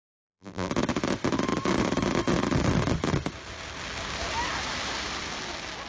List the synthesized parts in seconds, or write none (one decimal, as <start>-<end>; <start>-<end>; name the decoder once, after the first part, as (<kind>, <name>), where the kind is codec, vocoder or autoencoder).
0.0-0.7 (vocoder, BigVGAN v2)